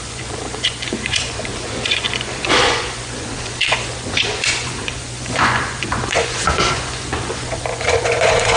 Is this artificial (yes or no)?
yes